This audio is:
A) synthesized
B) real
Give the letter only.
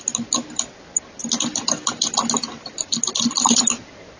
B